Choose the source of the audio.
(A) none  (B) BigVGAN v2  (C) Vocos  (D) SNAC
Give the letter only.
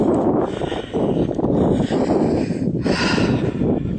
A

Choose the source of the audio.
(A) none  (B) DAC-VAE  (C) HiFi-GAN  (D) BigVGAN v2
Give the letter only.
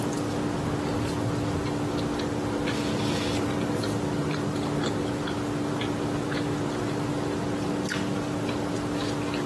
A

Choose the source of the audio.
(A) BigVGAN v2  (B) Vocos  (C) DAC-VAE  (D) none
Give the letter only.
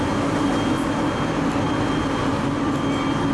D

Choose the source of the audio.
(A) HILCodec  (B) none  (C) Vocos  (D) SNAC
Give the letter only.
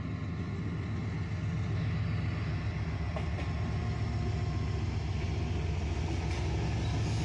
B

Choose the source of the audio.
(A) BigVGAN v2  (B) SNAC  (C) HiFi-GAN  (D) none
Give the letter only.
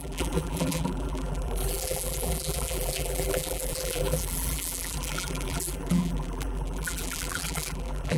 A